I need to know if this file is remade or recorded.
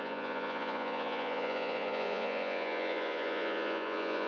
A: remade